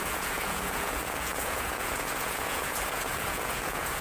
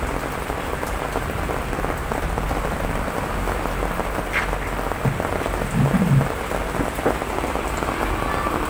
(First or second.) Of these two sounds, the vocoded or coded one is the first